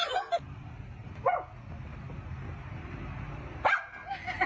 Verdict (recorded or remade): recorded